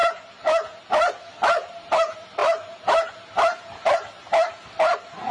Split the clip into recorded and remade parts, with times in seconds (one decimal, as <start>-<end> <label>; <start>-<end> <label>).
0.0-5.3 recorded